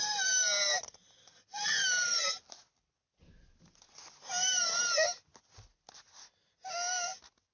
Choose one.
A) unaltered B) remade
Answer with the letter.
A